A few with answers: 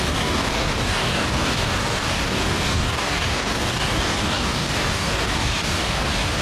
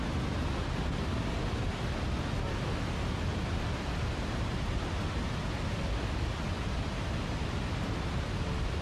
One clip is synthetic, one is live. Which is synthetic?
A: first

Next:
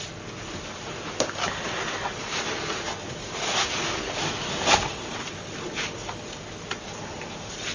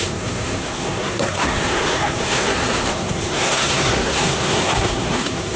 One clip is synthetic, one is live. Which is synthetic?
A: second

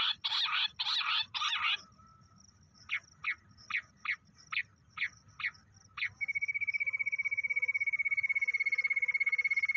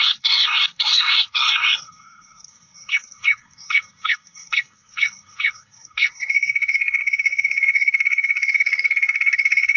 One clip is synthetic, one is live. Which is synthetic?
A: second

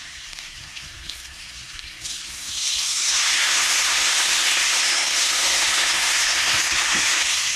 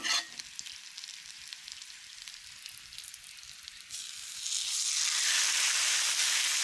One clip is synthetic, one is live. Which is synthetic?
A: first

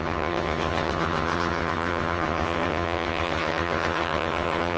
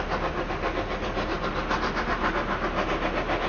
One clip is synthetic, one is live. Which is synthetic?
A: first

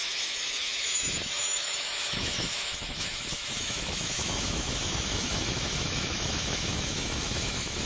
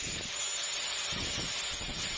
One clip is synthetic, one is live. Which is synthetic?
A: first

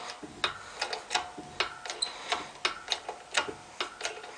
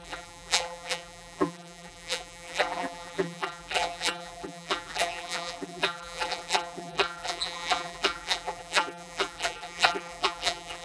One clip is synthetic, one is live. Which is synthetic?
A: second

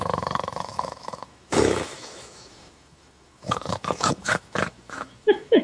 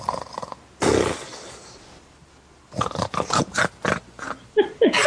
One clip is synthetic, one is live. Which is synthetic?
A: first